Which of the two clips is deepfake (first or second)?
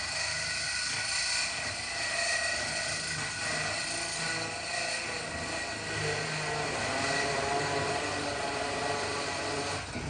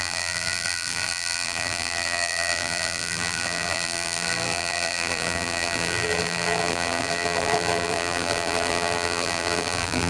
second